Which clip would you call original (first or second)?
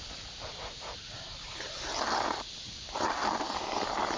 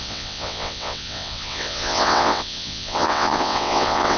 first